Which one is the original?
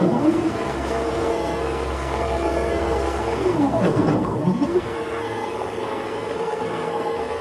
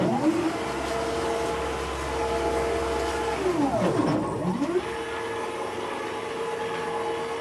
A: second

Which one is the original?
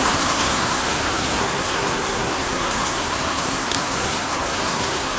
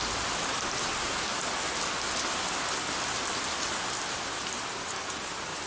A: second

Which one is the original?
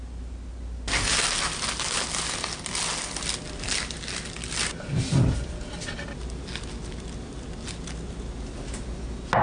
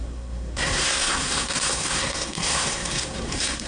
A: first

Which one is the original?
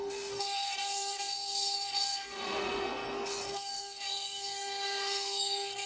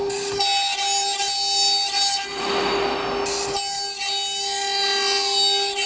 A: second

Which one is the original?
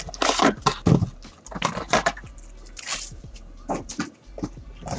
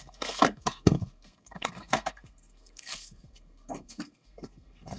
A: first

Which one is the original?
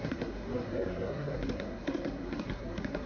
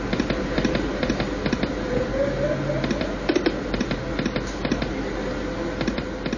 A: second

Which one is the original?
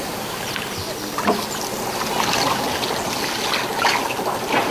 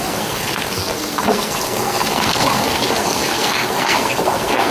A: first